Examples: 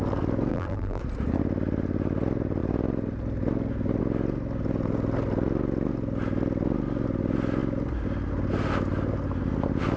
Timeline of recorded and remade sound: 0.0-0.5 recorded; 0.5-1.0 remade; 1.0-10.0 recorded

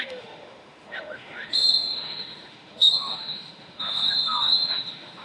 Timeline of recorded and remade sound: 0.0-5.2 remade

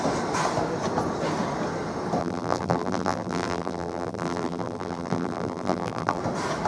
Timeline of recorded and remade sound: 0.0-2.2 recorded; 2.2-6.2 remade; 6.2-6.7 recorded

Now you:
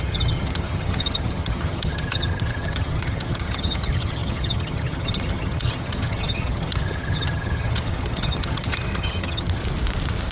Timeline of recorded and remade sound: 0.0-9.6 remade; 9.6-10.3 recorded